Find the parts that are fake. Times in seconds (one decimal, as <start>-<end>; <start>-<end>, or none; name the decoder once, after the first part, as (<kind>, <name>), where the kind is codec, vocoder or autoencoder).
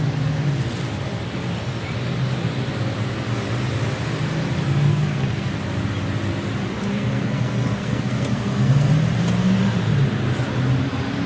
4.9-5.5 (codec, SNAC); 6.9-8.9